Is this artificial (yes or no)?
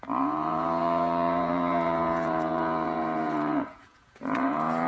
yes